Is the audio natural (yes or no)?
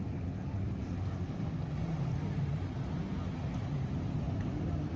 yes